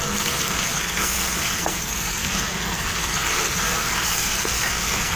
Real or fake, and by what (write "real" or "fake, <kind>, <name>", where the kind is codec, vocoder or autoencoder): fake, codec, SNAC